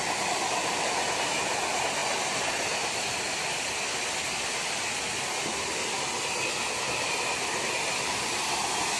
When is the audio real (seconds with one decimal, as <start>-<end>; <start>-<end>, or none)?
0.0-9.0